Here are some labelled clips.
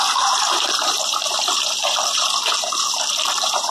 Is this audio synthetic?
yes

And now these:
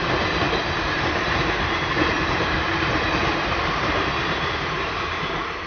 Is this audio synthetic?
yes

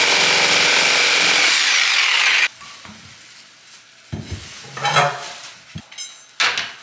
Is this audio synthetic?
no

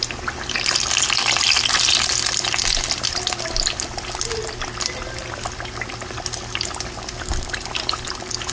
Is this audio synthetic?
no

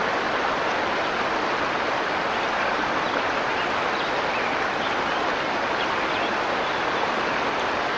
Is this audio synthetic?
no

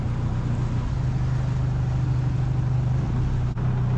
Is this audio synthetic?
no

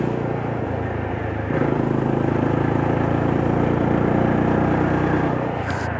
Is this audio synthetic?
yes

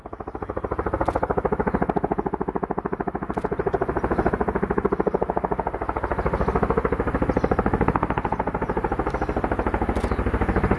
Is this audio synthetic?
no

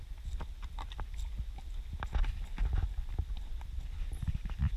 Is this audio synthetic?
no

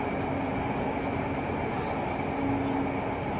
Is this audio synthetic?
no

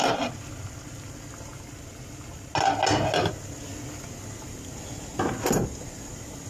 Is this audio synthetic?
no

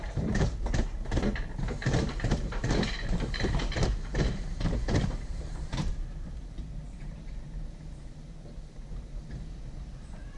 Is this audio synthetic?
yes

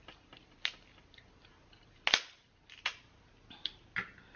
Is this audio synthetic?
no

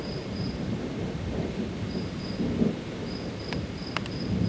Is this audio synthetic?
no